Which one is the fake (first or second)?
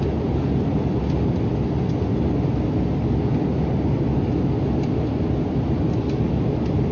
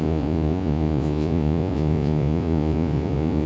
second